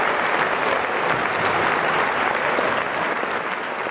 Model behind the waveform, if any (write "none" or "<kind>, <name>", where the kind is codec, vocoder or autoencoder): none